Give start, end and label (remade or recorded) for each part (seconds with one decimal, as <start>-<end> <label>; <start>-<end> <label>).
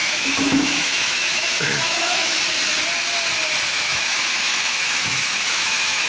0.0-2.4 remade; 2.4-3.7 recorded; 3.7-6.1 remade